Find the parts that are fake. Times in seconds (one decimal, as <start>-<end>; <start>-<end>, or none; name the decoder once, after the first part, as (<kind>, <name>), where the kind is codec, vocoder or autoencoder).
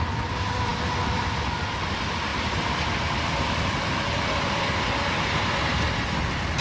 none